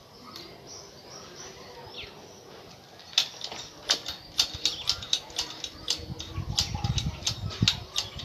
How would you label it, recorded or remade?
recorded